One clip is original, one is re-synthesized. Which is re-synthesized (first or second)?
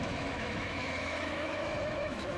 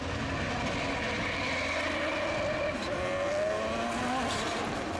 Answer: first